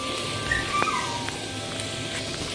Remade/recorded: recorded